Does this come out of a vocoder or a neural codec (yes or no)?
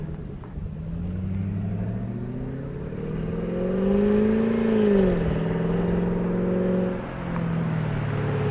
no